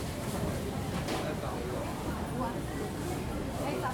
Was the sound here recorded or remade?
remade